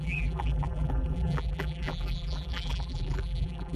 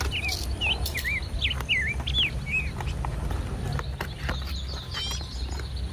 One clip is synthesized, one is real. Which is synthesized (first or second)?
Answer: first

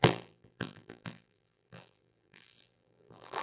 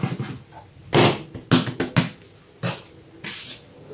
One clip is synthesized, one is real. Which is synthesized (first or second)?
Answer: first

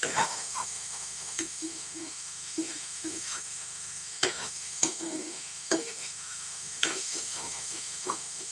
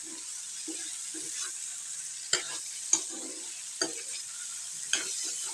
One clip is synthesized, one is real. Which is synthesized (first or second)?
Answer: first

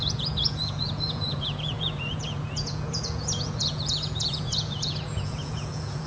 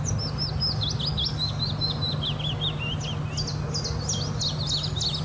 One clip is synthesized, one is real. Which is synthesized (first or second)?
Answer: first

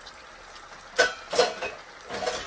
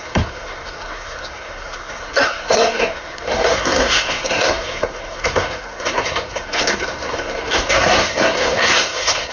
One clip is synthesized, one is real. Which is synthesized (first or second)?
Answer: second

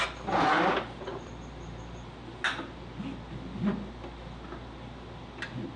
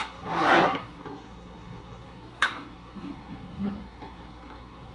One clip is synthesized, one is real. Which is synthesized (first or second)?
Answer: second